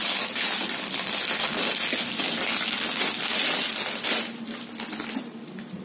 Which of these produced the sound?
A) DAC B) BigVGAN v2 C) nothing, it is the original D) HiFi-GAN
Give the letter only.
C